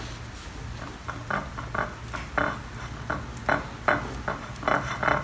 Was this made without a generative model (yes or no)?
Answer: yes